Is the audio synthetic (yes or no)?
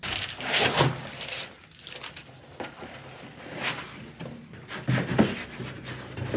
no